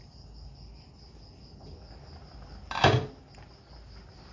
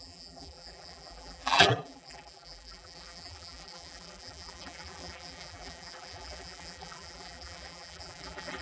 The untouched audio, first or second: first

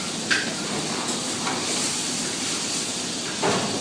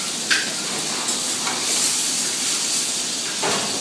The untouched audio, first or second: second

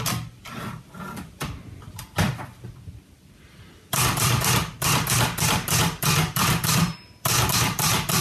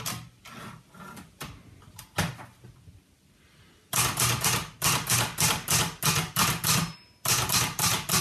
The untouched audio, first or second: second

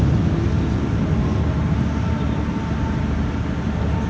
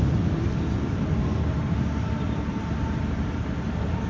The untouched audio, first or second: first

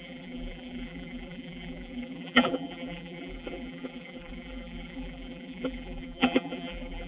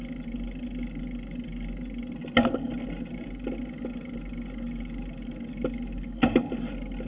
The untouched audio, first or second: second